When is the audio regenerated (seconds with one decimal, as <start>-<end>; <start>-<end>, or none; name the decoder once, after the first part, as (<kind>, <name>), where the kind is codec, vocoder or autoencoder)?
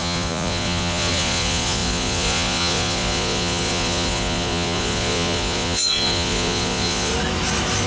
0.0-7.1 (vocoder, Vocos)